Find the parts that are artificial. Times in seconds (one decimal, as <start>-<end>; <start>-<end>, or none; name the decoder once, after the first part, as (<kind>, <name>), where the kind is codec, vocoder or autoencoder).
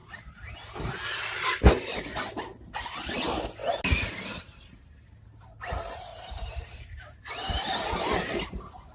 6.1-7.2 (vocoder, BigVGAN v2)